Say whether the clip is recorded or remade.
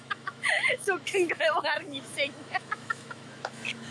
remade